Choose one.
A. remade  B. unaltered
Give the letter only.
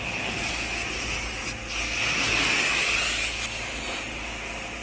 B